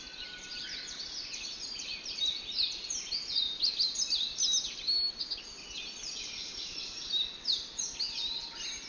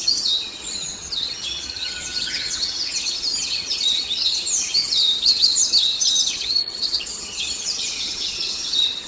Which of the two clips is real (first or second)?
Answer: first